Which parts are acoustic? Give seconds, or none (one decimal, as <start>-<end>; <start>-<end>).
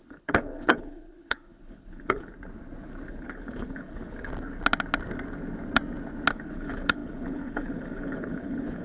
2.3-3.1; 4.3-6.3